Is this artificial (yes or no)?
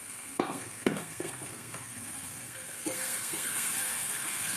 yes